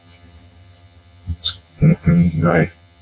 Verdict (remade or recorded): remade